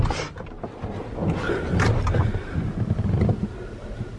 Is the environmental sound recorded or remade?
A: recorded